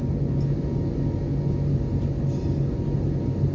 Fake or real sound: real